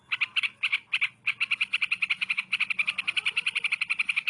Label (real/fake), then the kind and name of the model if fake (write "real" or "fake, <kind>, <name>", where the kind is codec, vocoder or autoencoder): real